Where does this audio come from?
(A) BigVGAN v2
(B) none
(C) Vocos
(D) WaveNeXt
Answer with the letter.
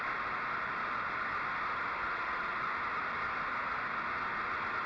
A